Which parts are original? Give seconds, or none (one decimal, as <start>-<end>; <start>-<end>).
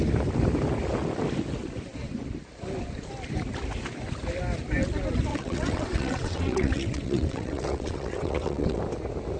0.0-5.3; 8.8-9.4